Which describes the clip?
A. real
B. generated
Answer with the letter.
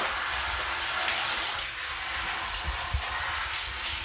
A